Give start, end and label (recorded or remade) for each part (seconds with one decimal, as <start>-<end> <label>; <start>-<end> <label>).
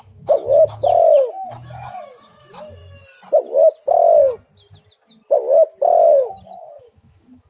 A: 0.0-2.8 remade; 2.8-6.8 recorded; 6.8-7.5 remade